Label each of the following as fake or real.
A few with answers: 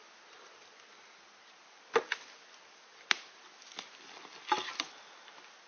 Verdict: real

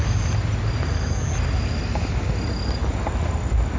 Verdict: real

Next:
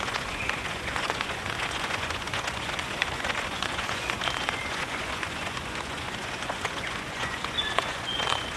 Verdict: fake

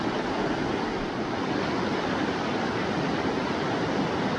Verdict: real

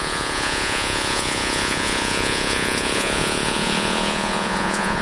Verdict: fake